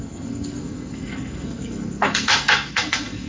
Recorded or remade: remade